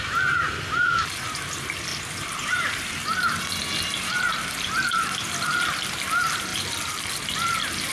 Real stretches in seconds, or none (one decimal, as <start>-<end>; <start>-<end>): 0.0-1.9; 3.4-7.9